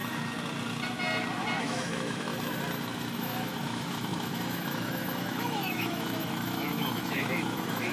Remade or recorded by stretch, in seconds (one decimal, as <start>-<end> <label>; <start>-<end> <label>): 0.0-1.6 recorded; 1.6-2.3 remade; 2.3-3.2 recorded; 3.2-7.9 remade